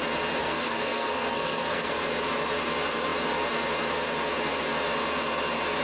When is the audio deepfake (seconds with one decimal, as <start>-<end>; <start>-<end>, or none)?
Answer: 0.4-2.0